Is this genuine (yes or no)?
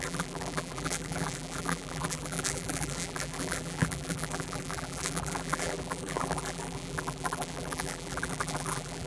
no